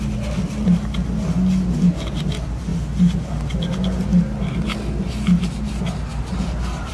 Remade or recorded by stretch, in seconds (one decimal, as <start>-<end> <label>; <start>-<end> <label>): 0.0-6.9 recorded